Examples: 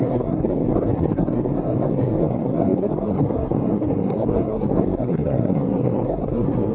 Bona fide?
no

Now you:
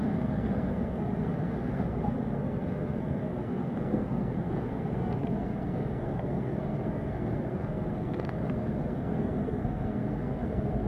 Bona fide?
no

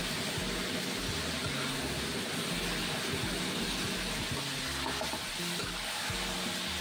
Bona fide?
yes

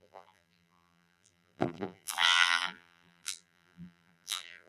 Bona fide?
no